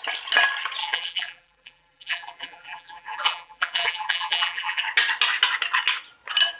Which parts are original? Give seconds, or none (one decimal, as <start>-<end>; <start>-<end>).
0.0-0.8; 4.8-6.6